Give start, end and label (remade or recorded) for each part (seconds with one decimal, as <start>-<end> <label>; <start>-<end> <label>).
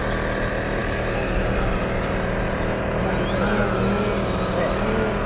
0.0-5.3 recorded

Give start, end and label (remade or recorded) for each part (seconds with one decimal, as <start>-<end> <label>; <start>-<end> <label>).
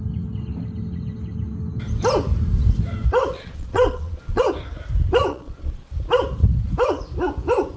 0.0-3.3 recorded; 3.3-4.4 remade; 4.4-5.3 recorded; 5.3-5.9 remade; 5.9-7.8 recorded